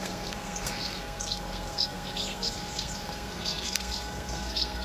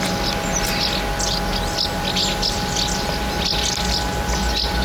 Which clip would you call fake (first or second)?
first